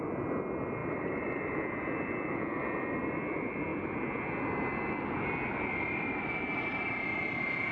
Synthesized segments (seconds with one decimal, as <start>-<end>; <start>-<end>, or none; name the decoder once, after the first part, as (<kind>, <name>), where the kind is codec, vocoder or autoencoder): 0.8-2.6 (vocoder, BigVGAN v2)

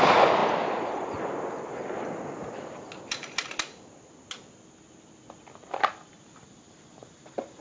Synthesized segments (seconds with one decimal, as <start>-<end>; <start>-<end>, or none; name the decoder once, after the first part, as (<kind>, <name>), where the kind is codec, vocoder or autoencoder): none

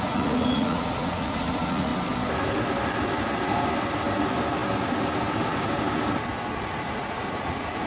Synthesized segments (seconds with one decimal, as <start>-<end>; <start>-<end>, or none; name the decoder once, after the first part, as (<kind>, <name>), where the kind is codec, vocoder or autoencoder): 0.0-1.9 (vocoder, Vocos); 6.6-7.9

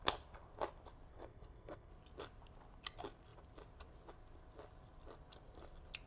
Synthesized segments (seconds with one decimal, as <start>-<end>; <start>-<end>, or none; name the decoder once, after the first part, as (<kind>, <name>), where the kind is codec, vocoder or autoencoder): 1.1-1.9 (codec, SNAC)

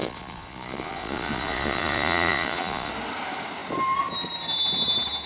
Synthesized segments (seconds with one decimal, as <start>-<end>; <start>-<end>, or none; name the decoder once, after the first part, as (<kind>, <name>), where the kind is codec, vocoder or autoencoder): 0.0-2.9 (vocoder, Vocos)

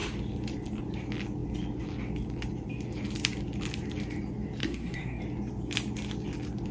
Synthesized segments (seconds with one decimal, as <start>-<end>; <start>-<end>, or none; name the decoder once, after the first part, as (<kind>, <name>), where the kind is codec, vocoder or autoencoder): 4.6-5.2 (codec, SNAC)